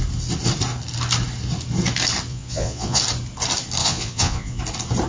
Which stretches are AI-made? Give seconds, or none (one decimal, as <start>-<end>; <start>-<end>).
2.3-3.0; 3.8-4.6